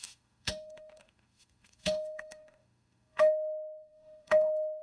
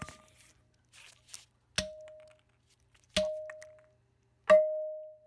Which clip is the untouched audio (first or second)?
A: second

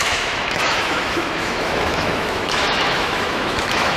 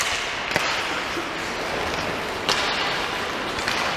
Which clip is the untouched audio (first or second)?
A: second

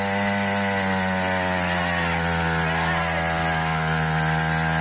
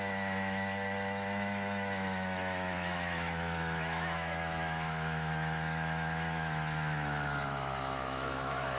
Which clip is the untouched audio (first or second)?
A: first